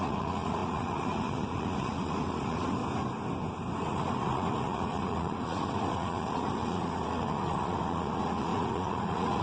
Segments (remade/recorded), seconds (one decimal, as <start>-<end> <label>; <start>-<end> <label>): 0.0-2.8 remade; 2.8-3.8 recorded; 3.8-9.4 remade